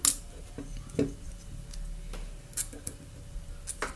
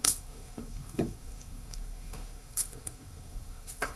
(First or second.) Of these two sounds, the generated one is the second